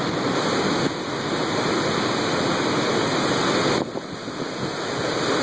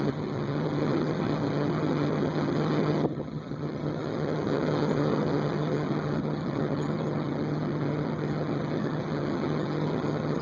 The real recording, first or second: first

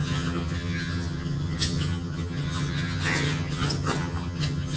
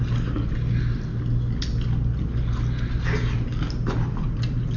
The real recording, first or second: second